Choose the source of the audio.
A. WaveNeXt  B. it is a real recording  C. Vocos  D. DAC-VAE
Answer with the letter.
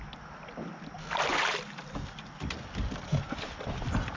B